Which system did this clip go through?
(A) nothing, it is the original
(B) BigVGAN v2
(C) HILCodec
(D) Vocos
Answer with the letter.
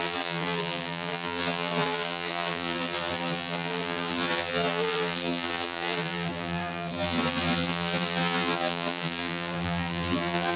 B